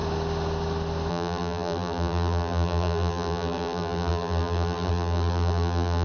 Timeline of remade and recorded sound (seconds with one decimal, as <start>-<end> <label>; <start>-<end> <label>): 0.0-1.1 recorded; 1.1-6.0 remade